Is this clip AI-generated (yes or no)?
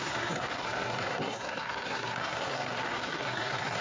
yes